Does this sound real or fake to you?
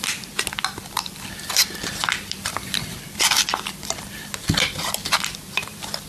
fake